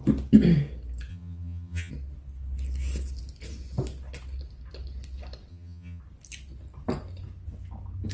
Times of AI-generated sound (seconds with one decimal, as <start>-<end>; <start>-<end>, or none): 1.1-1.9; 5.5-6.0